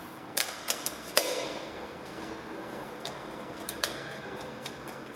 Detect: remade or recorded remade